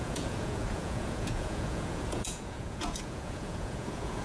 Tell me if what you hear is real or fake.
fake